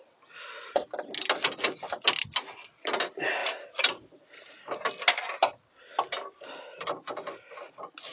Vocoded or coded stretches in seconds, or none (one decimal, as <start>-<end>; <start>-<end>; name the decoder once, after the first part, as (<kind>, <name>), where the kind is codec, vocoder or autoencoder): none